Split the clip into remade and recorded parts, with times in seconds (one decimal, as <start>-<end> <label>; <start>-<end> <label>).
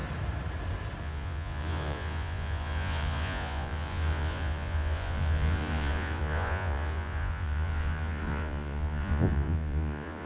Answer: 0.0-1.0 recorded; 1.0-10.3 remade